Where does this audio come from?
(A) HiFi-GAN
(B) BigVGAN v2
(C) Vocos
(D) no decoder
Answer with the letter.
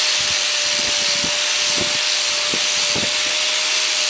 D